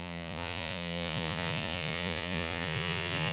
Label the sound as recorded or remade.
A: remade